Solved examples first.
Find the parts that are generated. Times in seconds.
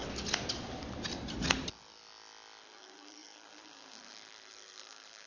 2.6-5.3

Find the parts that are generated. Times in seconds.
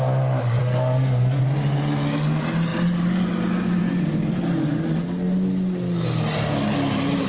0.6-1.4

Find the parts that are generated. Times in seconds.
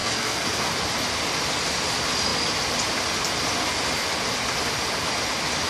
0.0-0.7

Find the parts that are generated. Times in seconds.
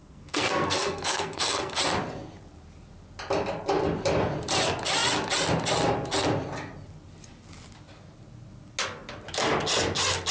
0.0-1.8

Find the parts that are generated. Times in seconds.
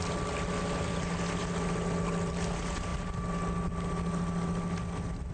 none